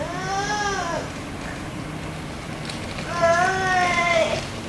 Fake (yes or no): no